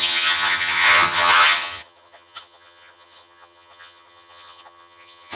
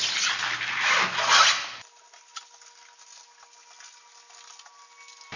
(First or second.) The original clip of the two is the second